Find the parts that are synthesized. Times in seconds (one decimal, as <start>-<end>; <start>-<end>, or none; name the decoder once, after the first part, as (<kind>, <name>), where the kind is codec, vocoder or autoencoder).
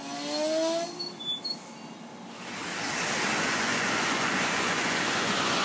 3.4-5.6 (vocoder, Vocos)